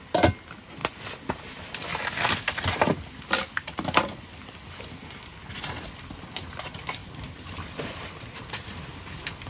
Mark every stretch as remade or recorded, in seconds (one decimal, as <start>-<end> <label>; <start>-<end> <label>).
0.0-9.5 recorded